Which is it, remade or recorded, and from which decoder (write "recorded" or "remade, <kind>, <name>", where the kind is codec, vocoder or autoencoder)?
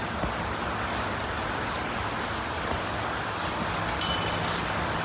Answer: recorded